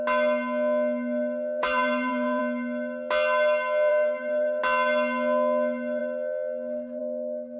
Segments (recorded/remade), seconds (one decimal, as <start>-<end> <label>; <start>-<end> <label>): 0.0-1.6 recorded; 1.6-2.4 remade; 2.4-3.9 recorded; 3.9-4.6 remade; 4.6-7.6 recorded